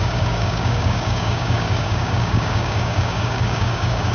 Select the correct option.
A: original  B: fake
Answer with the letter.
B